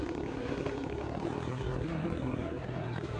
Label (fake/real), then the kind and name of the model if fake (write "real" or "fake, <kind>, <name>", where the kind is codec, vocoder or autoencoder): fake, codec, SNAC